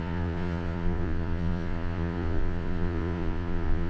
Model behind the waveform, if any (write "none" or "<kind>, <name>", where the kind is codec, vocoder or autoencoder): vocoder, Vocos